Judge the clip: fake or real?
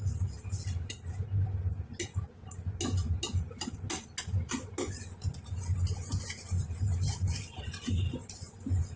real